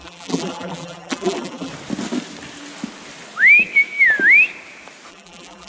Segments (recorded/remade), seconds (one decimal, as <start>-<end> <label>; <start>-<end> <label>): 0.0-1.7 remade; 1.7-5.1 recorded; 5.1-5.7 remade